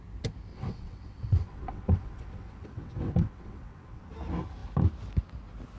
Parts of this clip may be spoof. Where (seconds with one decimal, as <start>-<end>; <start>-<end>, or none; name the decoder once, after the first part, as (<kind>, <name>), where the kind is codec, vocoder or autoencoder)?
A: 0.5-4.0 (vocoder, WaveNeXt)